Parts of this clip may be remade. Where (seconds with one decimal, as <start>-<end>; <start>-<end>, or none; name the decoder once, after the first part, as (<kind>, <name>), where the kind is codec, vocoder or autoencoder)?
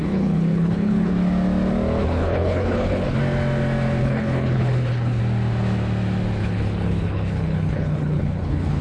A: 0.0-1.1 (codec, HILCodec); 2.0-3.2; 4.0-5.2; 6.4-8.8